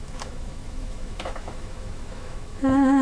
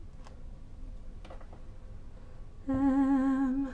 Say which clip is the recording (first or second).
second